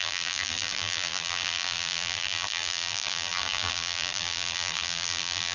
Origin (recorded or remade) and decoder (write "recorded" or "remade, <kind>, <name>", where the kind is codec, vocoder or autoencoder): remade, vocoder, BigVGAN v2